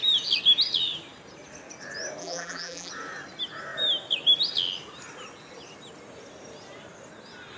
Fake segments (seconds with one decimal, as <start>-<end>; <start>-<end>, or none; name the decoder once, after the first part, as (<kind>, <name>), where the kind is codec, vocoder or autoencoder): 2.2-2.9 (vocoder, BigVGAN v2)